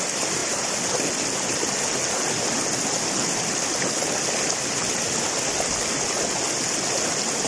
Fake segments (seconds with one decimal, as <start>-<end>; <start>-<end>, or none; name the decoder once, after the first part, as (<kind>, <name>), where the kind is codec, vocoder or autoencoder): none